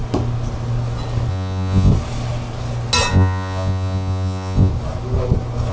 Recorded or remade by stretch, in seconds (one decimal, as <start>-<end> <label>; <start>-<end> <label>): 0.0-1.3 recorded; 1.3-1.9 remade; 1.9-3.1 recorded; 3.1-4.7 remade; 4.7-5.7 recorded